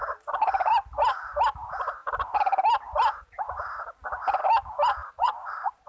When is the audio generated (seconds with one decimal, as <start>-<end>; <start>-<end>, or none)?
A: 5.0-5.9